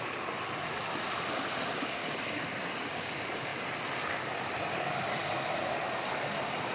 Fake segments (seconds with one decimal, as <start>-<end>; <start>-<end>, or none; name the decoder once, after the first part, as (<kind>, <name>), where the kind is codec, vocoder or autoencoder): 2.0-3.1 (codec, DAC)